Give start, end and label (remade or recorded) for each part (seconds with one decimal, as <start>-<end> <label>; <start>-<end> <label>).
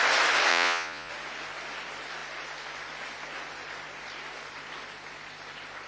0.0-0.5 recorded; 0.5-1.1 remade; 1.1-5.9 recorded